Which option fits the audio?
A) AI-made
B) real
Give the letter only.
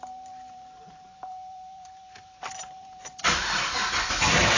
A